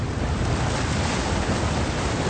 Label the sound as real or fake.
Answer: real